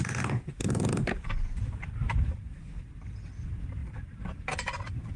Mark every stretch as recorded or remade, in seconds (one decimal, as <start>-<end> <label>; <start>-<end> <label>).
0.0-0.6 recorded; 0.6-2.3 remade; 2.3-3.8 recorded; 3.8-5.2 remade